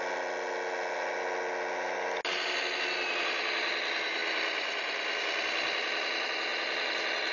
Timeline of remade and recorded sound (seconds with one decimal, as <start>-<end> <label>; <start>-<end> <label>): 0.0-4.2 recorded; 4.2-5.2 remade; 5.2-6.5 recorded; 6.5-7.3 remade